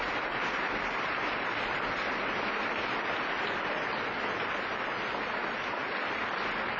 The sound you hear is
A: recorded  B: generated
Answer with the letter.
A